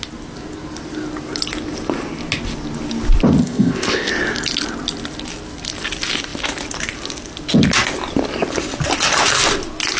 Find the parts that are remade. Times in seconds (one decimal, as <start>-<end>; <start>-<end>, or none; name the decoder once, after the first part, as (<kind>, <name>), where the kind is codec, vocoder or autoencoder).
3.4-4.1 (codec, ZipCodec)

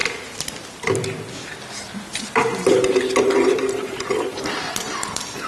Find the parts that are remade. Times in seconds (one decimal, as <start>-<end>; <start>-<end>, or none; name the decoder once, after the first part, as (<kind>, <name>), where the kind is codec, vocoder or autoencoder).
3.2-5.5 (vocoder, BigVGAN v2)

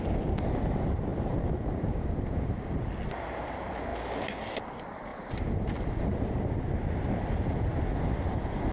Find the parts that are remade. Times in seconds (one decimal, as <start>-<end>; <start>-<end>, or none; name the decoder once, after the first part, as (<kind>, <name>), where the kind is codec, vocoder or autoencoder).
1.1-2.8 (vocoder, BigVGAN v2); 5.1-6.7

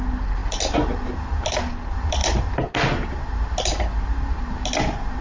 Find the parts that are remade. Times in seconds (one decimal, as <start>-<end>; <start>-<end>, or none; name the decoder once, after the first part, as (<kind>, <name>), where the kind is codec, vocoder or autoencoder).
none

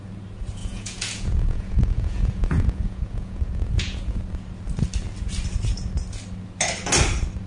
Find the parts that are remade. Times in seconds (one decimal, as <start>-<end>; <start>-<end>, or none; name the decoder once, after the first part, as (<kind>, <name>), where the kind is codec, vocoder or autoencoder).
0.6-4.2 (vocoder, Vocos)